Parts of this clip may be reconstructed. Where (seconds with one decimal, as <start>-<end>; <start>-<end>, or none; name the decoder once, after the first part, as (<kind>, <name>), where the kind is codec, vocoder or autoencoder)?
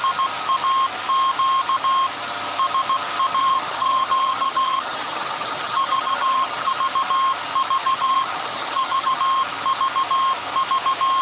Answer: 3.4-6.7 (vocoder, HiFi-GAN); 7.8-9.2